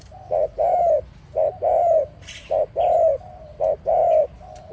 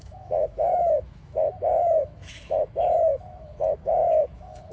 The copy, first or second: second